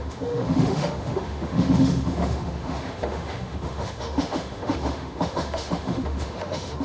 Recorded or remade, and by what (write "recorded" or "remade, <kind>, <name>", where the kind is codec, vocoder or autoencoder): remade, autoencoder, DAC-VAE